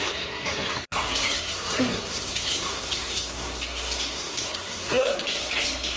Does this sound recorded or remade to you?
remade